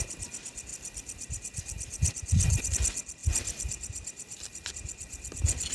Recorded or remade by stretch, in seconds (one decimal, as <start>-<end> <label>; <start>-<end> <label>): 0.0-0.7 recorded; 0.7-2.7 remade; 2.7-3.2 recorded; 3.2-4.7 remade; 4.7-5.7 recorded